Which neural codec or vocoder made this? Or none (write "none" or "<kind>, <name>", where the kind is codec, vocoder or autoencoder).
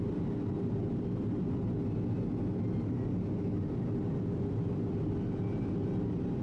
none